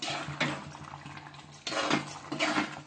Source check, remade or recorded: recorded